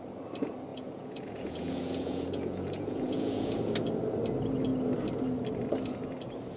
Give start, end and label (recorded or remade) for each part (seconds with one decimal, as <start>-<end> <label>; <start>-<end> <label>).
0.0-0.7 recorded; 0.7-3.6 remade; 3.6-6.6 recorded